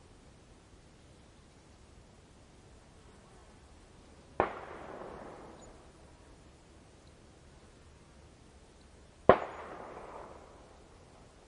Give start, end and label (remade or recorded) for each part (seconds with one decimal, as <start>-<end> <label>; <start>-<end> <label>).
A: 0.0-11.5 recorded